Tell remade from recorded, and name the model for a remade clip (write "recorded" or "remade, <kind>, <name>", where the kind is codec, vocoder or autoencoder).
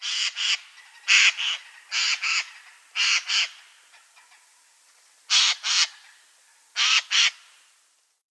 recorded